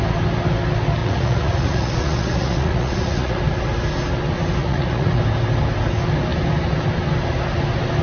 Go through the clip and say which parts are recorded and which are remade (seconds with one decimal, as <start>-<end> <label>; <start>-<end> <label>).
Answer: 0.0-1.0 recorded; 1.0-3.4 remade; 3.4-4.6 recorded; 4.6-5.2 remade; 5.2-8.0 recorded